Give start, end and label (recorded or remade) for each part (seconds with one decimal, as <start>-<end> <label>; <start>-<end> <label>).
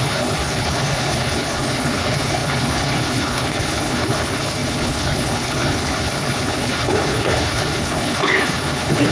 0.0-9.1 remade